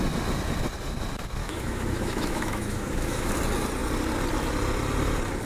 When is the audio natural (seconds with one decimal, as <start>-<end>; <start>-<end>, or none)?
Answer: 0.0-1.4; 3.3-5.5